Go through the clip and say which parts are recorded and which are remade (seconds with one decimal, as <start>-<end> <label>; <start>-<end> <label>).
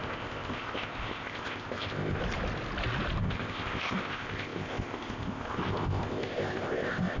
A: 0.0-2.2 remade; 2.2-3.2 recorded; 3.2-7.2 remade